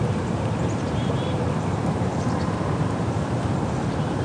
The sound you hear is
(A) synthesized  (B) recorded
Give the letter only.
A